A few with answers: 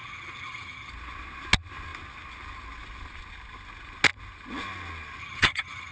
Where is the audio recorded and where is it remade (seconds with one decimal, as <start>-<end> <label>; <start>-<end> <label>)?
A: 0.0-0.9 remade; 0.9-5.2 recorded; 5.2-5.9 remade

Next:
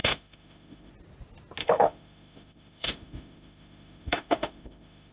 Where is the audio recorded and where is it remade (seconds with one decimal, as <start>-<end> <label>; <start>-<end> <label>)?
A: 0.0-0.9 remade; 0.9-1.6 recorded; 1.6-5.1 remade

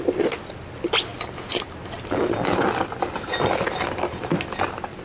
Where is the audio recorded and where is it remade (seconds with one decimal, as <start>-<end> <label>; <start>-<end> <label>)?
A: 0.0-5.0 recorded